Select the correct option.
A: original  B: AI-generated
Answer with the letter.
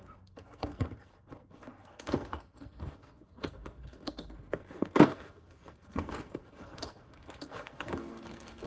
B